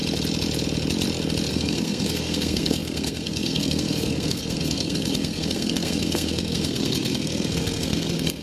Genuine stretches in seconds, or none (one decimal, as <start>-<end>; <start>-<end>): 0.0-1.5